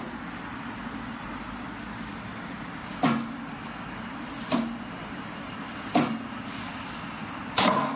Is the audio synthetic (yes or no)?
no